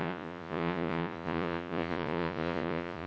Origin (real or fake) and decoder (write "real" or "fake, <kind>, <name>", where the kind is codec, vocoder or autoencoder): fake, vocoder, Vocos